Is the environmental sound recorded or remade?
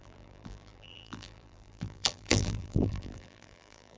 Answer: remade